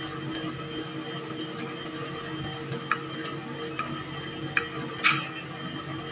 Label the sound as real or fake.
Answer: real